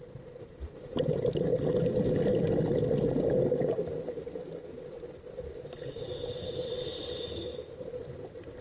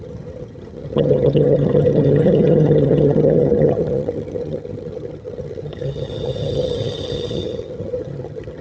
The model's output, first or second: second